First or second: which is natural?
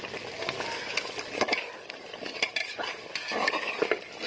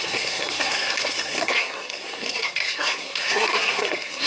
first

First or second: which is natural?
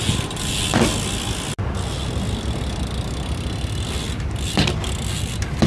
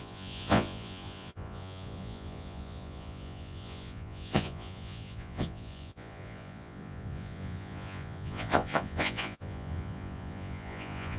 first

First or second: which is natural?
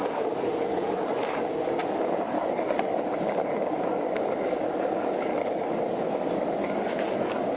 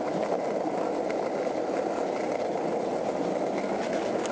second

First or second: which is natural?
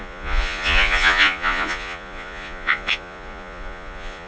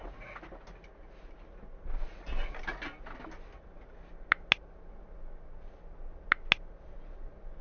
second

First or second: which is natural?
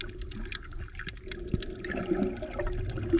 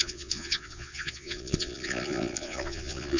first